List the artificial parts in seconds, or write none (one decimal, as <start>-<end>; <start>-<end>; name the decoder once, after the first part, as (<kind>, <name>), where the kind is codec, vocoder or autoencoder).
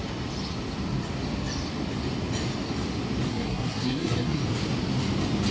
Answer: 3.3-4.4 (codec, SNAC)